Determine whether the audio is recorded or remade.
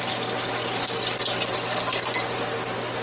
recorded